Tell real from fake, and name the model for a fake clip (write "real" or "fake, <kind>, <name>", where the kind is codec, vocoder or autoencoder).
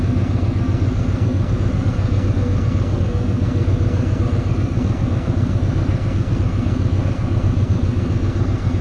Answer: fake, codec, SNAC